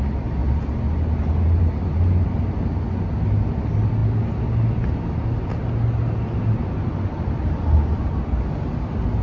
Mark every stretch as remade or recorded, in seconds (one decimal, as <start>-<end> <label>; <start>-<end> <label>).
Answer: 0.0-9.2 recorded